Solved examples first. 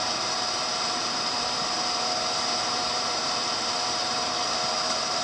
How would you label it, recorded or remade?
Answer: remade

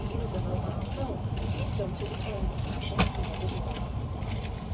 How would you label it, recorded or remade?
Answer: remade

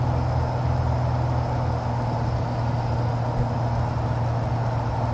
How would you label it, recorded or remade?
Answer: recorded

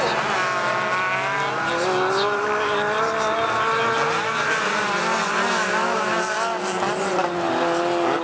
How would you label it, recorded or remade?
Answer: recorded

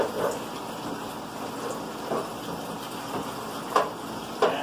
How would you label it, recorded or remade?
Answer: recorded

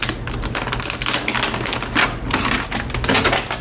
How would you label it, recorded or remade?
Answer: recorded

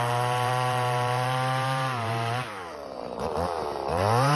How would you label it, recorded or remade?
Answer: remade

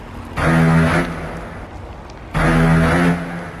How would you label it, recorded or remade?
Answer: recorded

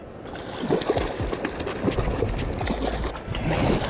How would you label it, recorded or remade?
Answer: recorded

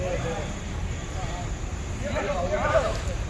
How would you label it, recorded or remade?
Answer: remade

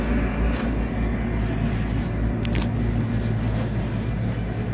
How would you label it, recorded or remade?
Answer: recorded